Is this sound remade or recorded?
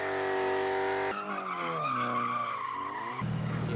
recorded